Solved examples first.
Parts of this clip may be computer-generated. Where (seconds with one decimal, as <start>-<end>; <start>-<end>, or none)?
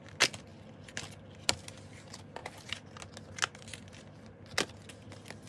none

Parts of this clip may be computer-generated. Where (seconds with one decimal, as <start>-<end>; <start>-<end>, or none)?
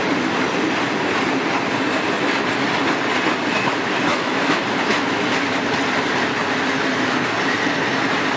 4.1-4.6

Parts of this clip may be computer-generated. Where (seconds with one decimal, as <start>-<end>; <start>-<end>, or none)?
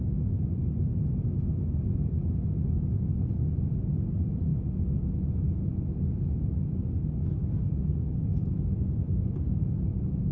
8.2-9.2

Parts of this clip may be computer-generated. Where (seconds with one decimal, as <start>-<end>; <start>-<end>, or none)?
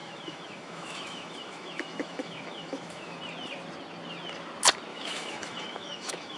0.0-3.2; 4.9-6.4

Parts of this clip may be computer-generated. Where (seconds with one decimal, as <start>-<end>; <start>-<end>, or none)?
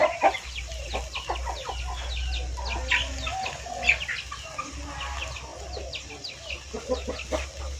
none